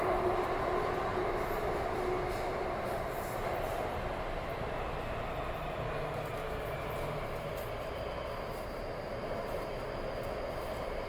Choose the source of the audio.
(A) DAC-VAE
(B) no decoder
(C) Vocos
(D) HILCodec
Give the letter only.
B